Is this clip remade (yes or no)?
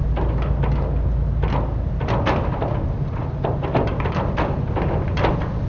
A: no